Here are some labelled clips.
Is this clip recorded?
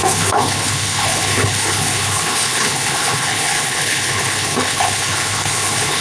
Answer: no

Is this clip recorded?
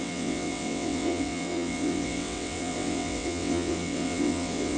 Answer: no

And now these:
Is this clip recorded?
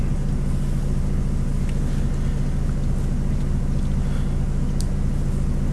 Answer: yes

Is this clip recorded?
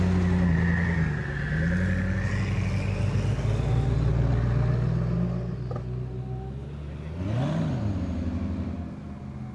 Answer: yes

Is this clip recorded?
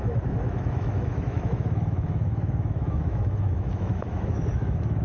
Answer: no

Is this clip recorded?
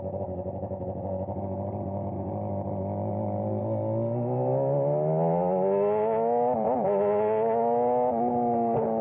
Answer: yes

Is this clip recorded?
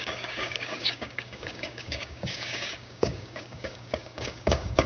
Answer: no